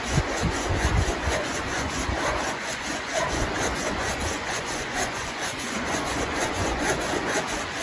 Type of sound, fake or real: fake